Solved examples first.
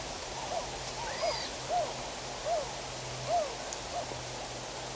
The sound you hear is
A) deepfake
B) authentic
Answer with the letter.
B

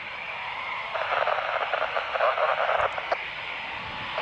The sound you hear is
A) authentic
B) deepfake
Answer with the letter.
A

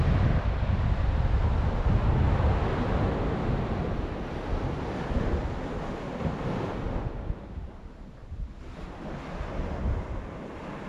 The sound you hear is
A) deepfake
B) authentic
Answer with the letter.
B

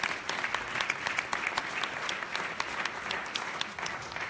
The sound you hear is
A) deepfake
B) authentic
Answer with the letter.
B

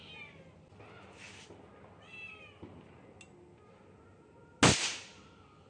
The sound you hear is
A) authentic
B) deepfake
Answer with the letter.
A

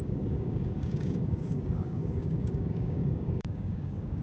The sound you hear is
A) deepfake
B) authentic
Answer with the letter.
A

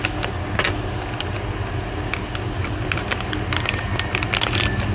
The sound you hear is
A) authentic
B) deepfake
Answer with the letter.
A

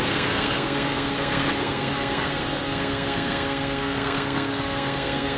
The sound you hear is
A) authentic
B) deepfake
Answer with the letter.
B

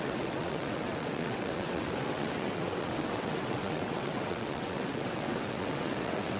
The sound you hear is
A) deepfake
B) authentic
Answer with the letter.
A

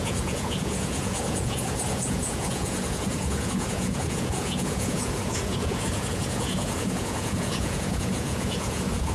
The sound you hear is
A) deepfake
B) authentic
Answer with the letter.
A